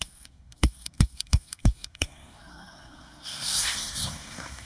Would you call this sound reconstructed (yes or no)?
yes